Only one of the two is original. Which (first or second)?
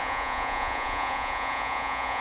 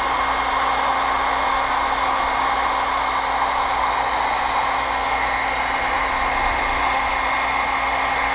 second